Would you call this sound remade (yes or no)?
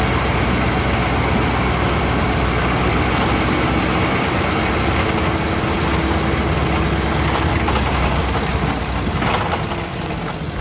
no